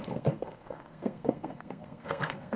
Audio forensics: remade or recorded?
remade